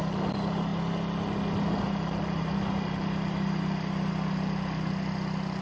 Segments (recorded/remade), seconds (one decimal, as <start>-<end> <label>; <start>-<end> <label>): 0.0-5.6 recorded